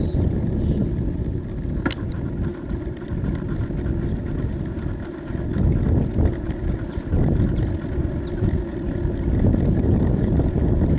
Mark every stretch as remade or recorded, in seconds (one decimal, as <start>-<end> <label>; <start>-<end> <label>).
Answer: 0.0-2.5 recorded; 2.5-3.2 remade; 3.2-6.8 recorded; 6.8-8.0 remade; 8.0-8.7 recorded; 8.7-11.0 remade